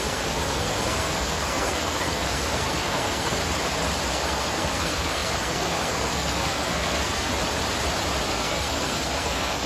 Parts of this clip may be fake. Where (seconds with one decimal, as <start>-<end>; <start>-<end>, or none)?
0.0-3.4; 4.1-7.3; 8.3-9.7